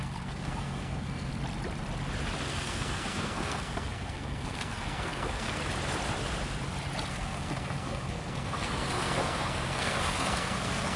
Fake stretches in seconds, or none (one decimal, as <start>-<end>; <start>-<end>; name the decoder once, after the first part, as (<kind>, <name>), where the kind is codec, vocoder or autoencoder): 0.0-1.3 (codec, SNAC); 2.5-5.6; 7.1-11.0